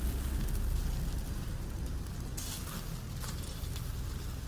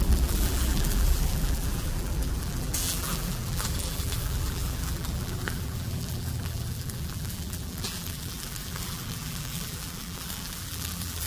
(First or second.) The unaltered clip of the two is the first